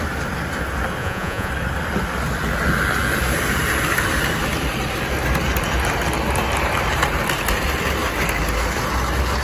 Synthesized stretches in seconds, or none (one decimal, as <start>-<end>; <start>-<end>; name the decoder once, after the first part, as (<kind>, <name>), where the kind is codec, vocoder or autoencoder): 1.0-1.5 (vocoder, Vocos)